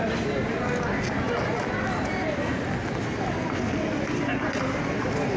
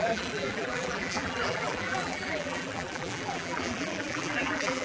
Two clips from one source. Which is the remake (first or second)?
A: second